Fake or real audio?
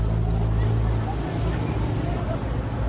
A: real